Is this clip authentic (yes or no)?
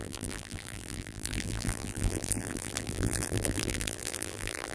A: no